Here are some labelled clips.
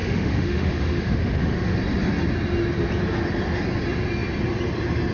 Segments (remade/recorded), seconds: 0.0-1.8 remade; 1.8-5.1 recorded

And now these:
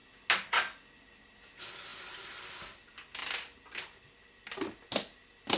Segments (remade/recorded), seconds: 0.0-5.6 recorded